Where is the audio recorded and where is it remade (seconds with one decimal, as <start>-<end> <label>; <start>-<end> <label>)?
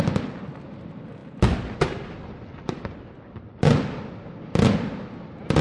0.0-5.6 recorded